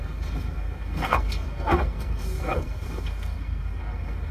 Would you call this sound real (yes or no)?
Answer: no